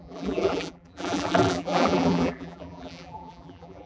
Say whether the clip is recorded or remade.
remade